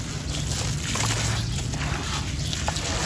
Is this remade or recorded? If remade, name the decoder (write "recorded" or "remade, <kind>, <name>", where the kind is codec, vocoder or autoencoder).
recorded